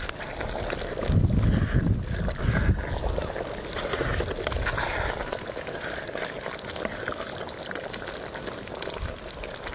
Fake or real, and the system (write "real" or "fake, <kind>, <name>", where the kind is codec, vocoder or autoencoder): real